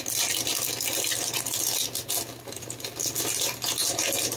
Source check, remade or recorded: recorded